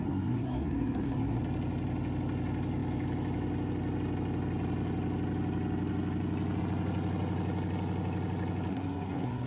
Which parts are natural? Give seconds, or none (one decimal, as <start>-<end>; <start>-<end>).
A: 1.4-8.7